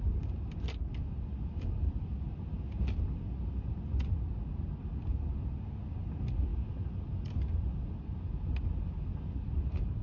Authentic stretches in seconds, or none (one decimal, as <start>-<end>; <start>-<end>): 0.0-10.0